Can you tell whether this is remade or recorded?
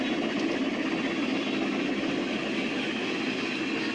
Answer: recorded